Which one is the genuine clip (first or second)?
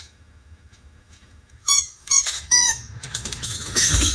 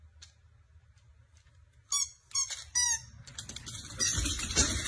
second